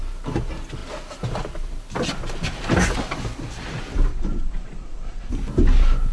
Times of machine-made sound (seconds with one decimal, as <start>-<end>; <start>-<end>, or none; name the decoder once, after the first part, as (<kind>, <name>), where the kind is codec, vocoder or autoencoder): 4.1-5.3 (vocoder, Vocos)